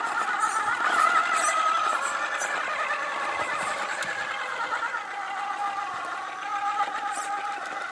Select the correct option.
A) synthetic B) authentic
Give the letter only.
B